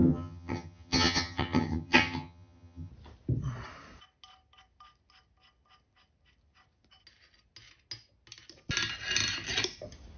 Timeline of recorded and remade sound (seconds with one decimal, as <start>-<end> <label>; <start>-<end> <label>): 0.0-2.9 remade; 2.9-10.2 recorded